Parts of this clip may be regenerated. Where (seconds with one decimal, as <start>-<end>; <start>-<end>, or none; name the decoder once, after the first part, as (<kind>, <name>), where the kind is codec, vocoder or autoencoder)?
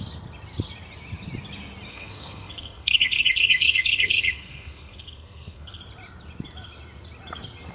1.9-5.8 (codec, SNAC)